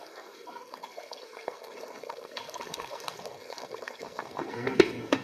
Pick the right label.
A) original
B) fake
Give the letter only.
B